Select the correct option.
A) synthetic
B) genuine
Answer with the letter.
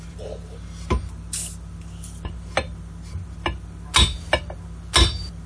B